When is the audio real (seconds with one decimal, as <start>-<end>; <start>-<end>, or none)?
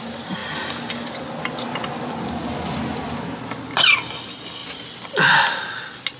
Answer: 0.0-6.2